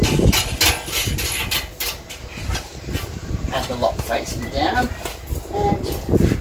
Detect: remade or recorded recorded